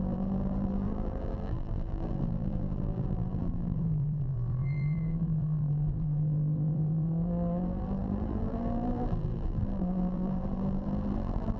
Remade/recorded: remade